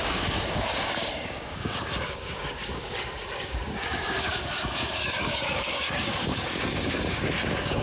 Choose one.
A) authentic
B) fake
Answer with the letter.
B